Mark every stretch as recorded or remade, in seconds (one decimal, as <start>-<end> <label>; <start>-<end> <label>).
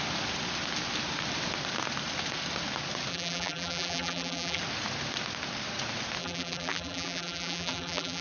0.0-3.1 recorded; 3.1-4.6 remade; 4.6-6.2 recorded; 6.2-8.2 remade